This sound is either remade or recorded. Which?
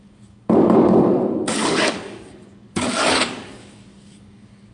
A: remade